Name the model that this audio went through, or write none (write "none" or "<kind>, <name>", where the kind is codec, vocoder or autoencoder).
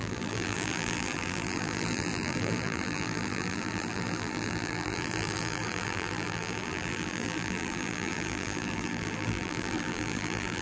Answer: vocoder, BigVGAN v2